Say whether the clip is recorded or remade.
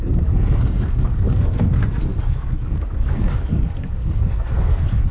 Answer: remade